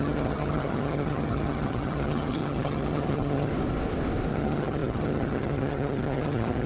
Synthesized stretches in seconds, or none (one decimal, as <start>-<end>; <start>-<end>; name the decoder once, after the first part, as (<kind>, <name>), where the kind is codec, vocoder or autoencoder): 0.0-3.5 (vocoder, HiFi-GAN); 4.3-6.7